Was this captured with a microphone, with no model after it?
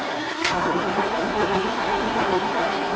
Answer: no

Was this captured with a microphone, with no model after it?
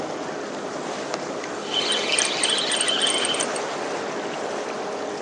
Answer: yes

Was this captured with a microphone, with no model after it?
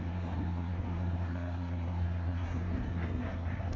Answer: no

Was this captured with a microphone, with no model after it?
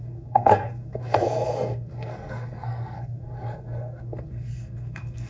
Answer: no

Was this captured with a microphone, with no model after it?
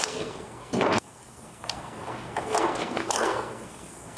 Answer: no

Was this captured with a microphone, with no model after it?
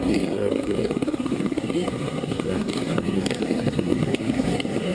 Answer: no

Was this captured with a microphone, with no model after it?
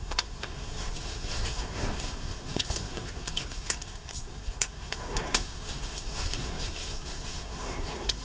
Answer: no